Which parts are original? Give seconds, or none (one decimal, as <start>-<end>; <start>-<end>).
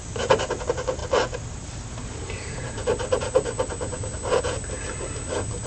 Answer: 0.0-1.0; 4.4-5.7